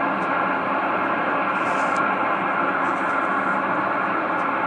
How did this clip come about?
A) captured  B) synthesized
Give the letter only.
A